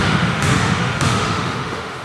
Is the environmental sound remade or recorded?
remade